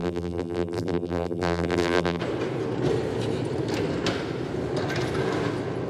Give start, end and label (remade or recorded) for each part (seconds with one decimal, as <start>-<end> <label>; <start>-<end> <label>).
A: 0.0-2.2 remade; 2.2-5.9 recorded